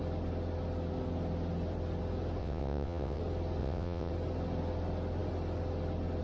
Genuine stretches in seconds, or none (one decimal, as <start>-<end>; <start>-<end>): 0.0-2.4; 3.2-3.6; 4.1-6.2